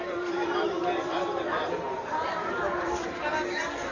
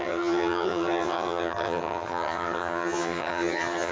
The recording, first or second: first